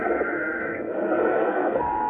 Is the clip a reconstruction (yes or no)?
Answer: yes